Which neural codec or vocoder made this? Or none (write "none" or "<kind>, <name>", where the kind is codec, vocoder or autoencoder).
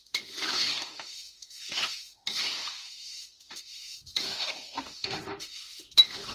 autoencoder, DAC-VAE